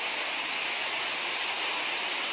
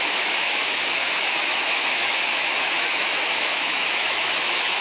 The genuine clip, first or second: first